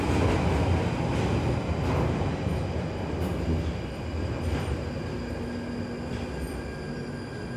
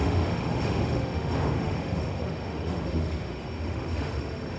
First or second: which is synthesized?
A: second